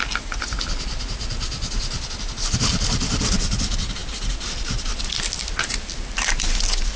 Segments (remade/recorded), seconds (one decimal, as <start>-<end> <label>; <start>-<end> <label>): 0.0-7.0 recorded